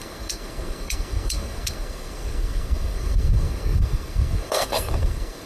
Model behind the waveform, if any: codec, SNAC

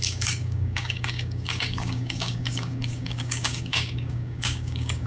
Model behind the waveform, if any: codec, DAC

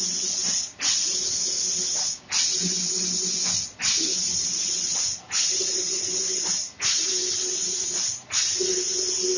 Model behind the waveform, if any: none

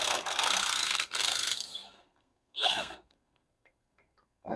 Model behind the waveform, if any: codec, SNAC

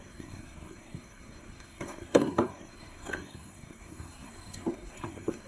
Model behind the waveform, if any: codec, SNAC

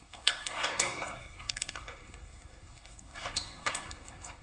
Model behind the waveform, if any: codec, SNAC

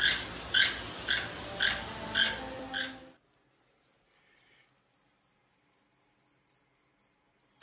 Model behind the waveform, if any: none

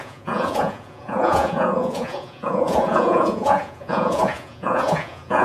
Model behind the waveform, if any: vocoder, Vocos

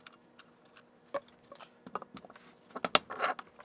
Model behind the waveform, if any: none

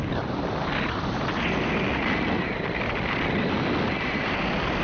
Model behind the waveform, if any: none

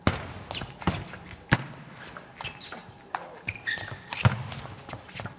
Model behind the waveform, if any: none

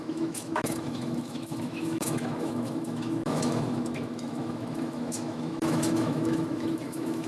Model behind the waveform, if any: autoencoder, DAC-VAE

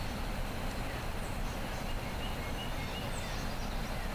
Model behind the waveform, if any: none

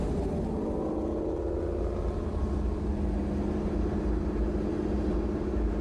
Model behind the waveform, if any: none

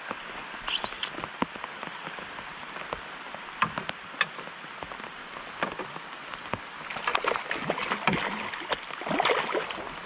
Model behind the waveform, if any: none